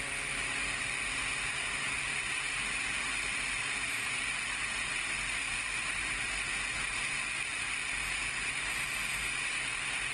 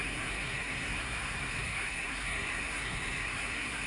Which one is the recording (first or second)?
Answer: first